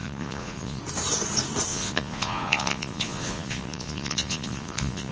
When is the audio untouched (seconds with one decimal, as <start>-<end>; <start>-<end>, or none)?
0.8-1.7